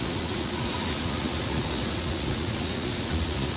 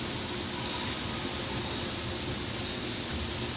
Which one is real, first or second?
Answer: second